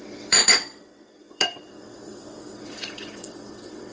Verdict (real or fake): fake